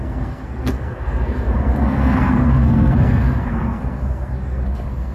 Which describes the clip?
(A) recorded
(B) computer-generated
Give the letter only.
B